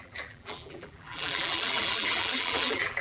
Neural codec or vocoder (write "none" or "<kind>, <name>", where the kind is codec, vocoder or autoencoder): vocoder, BigVGAN v2